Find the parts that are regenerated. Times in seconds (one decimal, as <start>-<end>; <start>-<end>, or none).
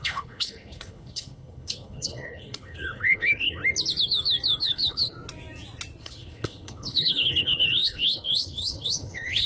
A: 0.0-3.6; 4.6-5.1; 6.0-9.5